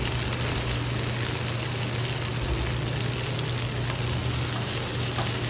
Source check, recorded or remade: recorded